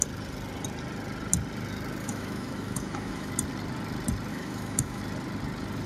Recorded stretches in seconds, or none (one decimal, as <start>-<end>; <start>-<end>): 0.0-2.0; 3.3-4.3; 5.0-5.9